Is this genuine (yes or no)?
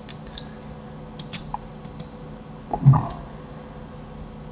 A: yes